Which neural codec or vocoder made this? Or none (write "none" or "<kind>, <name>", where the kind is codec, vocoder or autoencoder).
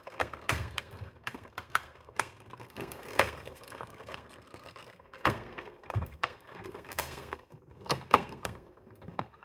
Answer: codec, SNAC